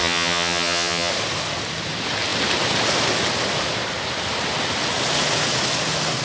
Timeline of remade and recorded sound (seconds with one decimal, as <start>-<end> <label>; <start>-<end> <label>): 0.0-1.1 remade; 1.1-6.2 recorded